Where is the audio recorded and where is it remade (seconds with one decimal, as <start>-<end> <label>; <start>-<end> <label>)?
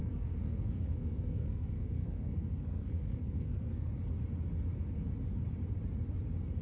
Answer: 0.0-4.0 remade; 4.0-6.6 recorded